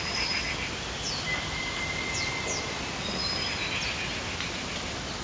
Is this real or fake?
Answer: real